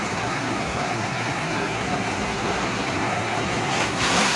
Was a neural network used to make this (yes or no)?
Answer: yes